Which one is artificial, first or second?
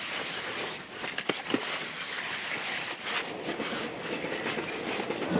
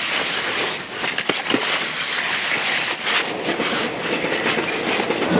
first